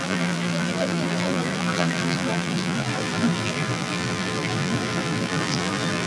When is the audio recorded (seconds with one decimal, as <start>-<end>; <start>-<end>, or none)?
none